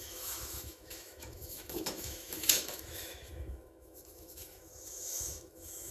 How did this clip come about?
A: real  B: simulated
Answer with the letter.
B